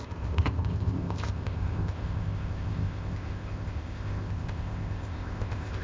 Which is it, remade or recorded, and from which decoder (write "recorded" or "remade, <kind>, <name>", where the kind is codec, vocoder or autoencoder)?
remade, codec, ZipCodec